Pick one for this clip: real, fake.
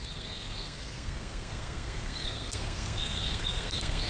fake